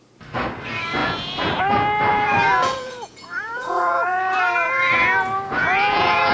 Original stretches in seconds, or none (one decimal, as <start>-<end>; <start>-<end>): 0.0-1.0; 1.6-2.1; 4.4-5.6